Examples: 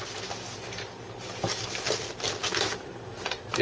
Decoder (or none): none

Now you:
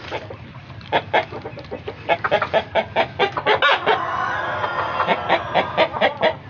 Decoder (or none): none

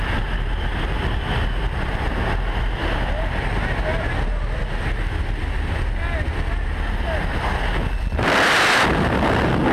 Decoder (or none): none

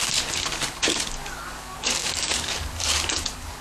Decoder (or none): codec, DAC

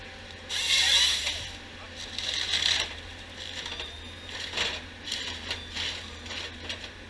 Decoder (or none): none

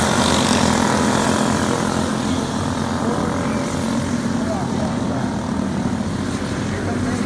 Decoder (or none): none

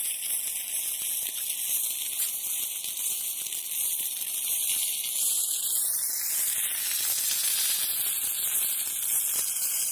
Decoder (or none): none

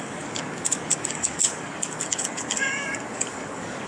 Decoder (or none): codec, DAC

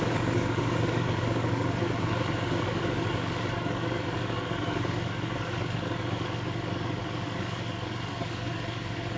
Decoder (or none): codec, DAC